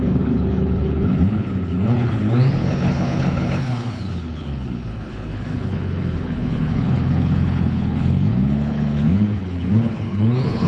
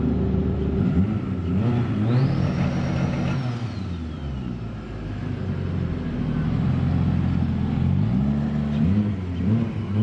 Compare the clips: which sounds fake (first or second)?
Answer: first